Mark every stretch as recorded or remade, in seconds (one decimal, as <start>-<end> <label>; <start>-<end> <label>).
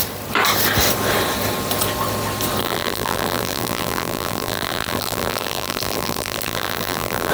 0.0-2.6 recorded; 2.6-7.3 remade